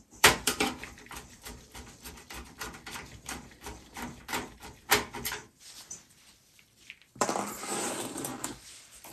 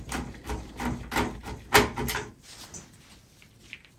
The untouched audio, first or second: second